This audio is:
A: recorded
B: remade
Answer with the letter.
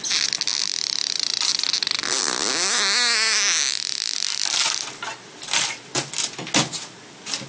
A